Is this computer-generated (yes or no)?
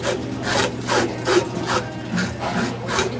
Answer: no